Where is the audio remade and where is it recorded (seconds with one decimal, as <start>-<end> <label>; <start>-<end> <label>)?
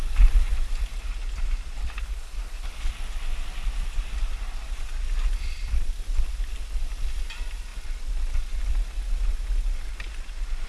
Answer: 0.0-1.8 recorded; 1.8-2.9 remade; 2.9-10.7 recorded